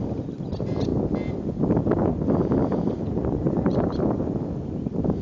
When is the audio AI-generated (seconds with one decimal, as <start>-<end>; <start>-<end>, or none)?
2.6-4.0